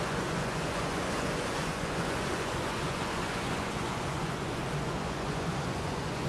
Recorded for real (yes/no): no